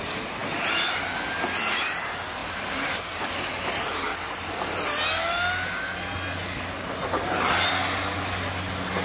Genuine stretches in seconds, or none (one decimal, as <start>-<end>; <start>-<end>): 0.0-9.0